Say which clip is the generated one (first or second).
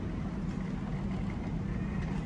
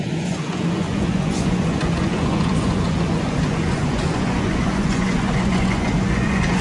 second